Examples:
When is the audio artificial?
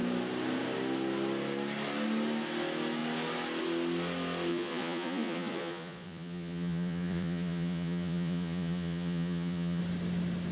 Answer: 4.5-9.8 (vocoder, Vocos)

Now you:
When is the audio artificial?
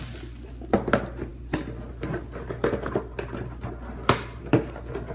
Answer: none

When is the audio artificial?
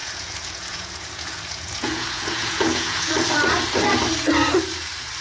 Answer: 0.0-3.1 (vocoder, Vocos)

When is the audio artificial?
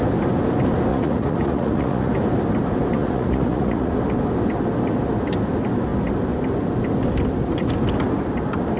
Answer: 0.9-2.1 (vocoder, Vocos); 2.9-3.9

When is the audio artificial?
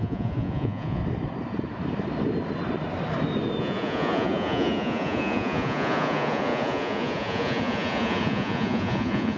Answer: 0.0-1.0 (vocoder, Vocos); 3.6-9.4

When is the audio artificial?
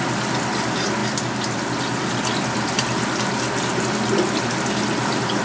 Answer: none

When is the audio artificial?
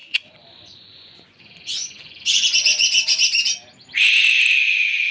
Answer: 0.0-3.1 (vocoder, Vocos)